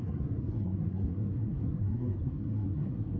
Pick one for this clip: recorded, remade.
remade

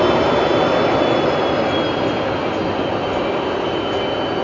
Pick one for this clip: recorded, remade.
recorded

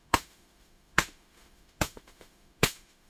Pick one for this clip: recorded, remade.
remade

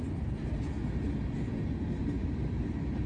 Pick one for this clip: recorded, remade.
recorded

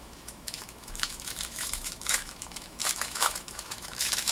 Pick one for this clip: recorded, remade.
remade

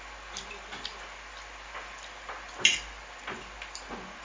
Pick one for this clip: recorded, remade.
recorded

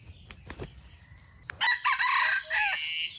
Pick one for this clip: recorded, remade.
recorded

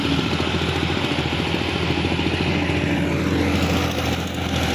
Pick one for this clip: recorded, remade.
recorded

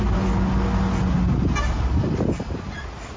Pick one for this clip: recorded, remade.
recorded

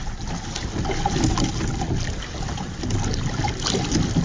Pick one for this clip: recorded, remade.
recorded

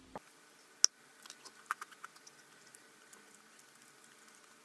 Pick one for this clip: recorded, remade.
recorded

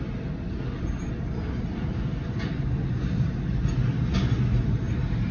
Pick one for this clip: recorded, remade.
recorded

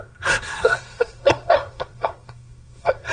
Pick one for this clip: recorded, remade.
remade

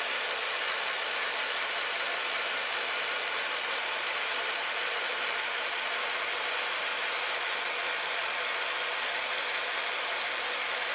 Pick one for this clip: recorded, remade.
remade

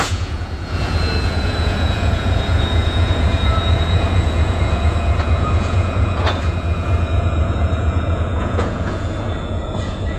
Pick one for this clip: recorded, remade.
remade